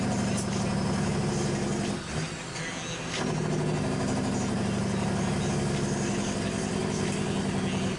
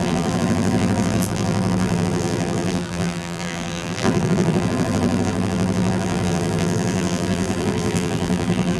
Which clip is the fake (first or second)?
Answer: second